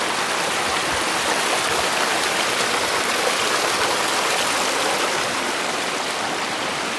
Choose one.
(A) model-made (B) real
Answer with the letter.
B